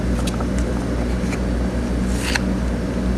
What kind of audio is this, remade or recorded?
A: recorded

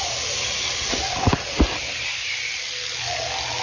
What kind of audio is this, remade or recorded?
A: recorded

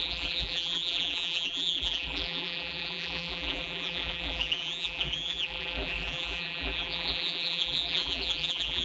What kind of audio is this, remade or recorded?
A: remade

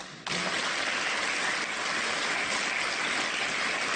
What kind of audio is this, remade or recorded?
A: recorded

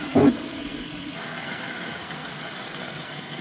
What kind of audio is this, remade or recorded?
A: remade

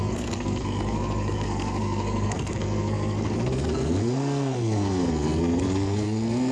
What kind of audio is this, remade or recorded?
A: remade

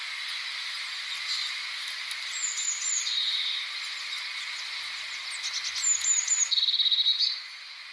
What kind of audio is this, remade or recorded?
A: recorded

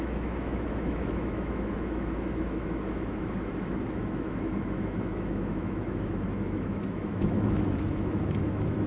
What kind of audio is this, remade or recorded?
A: remade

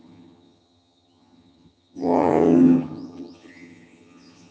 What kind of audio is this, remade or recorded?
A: remade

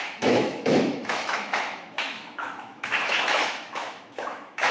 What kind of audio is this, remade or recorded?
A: remade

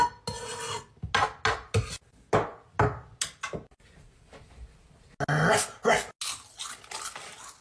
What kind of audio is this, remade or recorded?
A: recorded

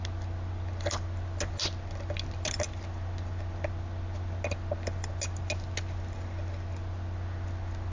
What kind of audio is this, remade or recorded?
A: recorded